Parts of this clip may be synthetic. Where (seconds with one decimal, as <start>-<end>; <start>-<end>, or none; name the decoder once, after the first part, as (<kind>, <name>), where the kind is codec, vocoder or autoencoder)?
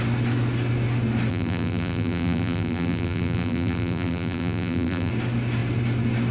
1.3-5.1 (vocoder, BigVGAN v2)